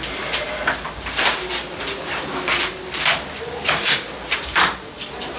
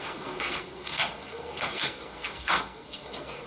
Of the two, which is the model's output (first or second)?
second